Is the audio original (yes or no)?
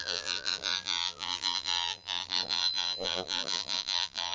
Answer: no